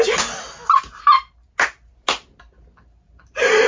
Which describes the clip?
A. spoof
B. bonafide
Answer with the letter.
B